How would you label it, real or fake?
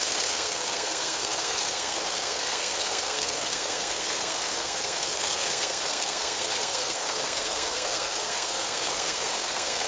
fake